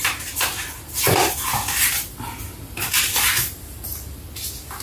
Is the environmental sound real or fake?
real